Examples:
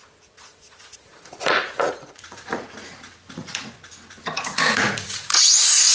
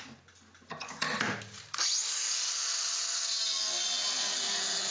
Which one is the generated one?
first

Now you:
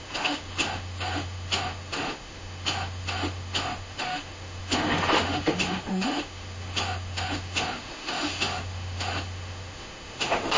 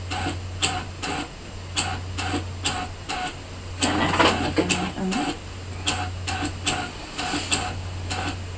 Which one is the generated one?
first